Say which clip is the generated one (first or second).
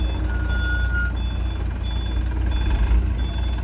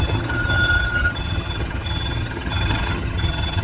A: second